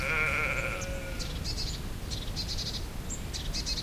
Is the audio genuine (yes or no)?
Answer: yes